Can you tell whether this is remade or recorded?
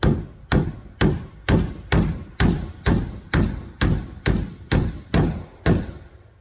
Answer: recorded